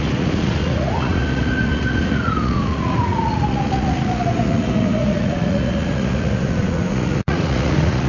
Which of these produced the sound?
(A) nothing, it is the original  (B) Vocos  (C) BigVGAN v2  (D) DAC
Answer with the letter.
B